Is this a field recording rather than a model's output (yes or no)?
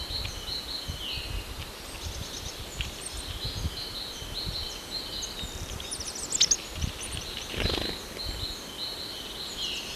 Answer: yes